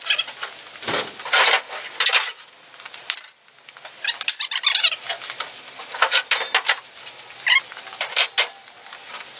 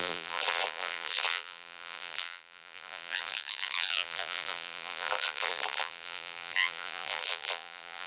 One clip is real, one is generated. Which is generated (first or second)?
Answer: second